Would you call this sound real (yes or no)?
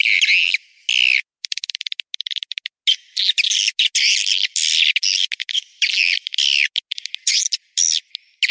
yes